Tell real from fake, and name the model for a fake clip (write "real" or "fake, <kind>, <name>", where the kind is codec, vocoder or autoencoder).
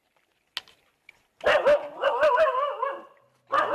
real